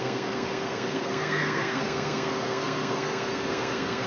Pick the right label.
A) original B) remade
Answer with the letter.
B